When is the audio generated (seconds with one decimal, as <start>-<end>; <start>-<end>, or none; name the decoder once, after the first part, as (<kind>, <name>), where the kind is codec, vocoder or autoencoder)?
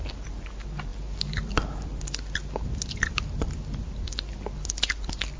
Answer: none